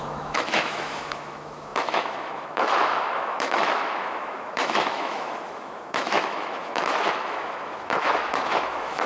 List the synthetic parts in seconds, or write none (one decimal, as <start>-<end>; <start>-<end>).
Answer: 0.0-9.1